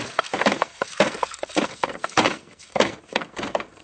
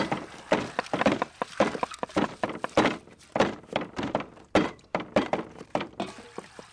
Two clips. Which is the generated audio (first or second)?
first